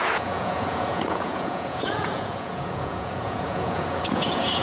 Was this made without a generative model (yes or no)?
no